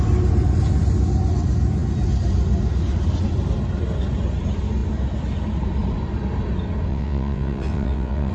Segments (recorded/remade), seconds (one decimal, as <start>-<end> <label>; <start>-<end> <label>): 0.0-6.9 recorded; 6.9-8.3 remade